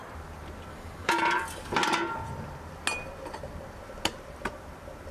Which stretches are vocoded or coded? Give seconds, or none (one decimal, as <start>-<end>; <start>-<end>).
0.7-1.2

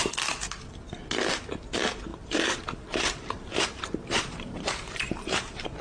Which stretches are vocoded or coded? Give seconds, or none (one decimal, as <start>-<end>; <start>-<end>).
2.1-5.8